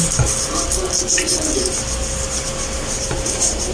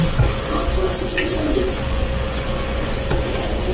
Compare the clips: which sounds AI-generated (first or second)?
second